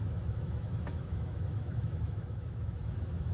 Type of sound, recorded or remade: remade